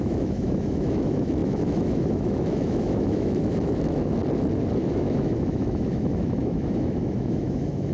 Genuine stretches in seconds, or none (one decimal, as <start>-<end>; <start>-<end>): 4.2-4.9